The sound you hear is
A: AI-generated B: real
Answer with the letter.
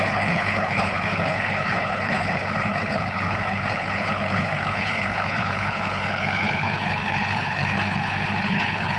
A